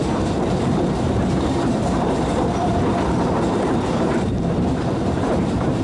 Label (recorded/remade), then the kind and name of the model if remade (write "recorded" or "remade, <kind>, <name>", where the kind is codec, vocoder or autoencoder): remade, vocoder, BigVGAN v2